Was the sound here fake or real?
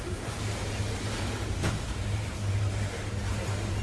fake